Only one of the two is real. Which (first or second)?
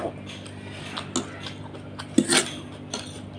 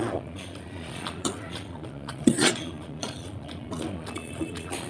first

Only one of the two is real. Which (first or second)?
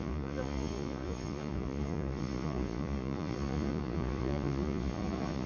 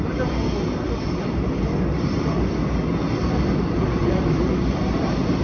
second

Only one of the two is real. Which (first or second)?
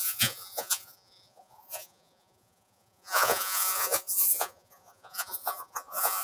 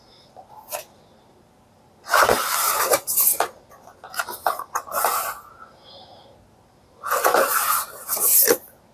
second